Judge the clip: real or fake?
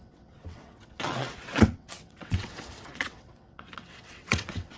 fake